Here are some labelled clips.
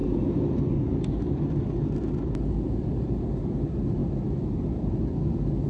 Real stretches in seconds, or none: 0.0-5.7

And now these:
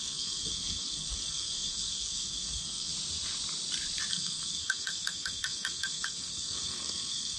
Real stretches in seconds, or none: 2.9-4.1

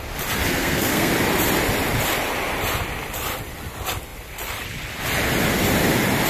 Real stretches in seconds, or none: 0.0-0.5; 1.1-6.3

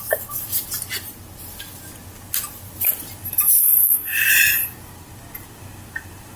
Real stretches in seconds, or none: 0.0-3.6; 4.3-6.4

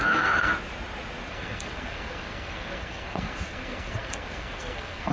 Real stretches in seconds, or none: 0.5-1.3

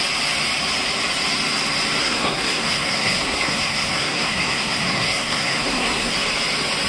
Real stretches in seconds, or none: 0.0-2.0; 6.1-6.9

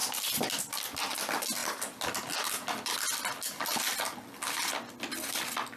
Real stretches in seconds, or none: 0.0-5.8

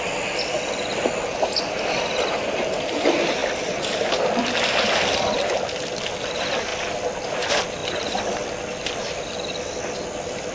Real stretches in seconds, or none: 0.0-10.5